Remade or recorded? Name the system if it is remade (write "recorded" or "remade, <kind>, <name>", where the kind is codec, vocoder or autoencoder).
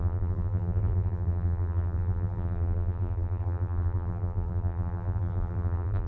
remade, vocoder, BigVGAN v2